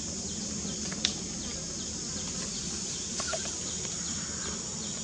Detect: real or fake real